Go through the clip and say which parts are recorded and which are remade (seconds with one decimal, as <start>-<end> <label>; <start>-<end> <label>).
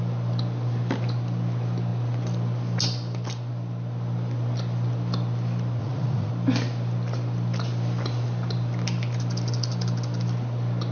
0.0-5.8 recorded; 5.8-6.3 remade; 6.3-10.9 recorded